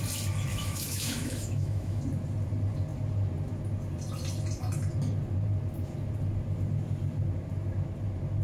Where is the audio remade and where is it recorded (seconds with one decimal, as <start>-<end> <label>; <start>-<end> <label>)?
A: 0.0-0.5 recorded; 0.5-2.0 remade; 2.0-8.4 recorded